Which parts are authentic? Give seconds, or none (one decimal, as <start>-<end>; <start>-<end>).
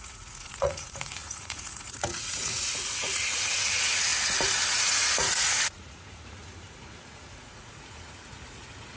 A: 4.1-4.7